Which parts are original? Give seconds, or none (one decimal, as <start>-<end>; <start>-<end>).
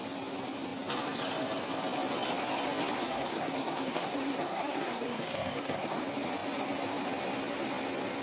0.0-3.0; 6.0-8.2